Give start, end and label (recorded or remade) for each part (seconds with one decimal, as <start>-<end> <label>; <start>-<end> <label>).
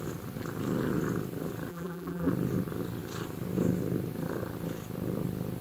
0.0-1.7 recorded; 1.7-2.3 remade; 2.3-5.6 recorded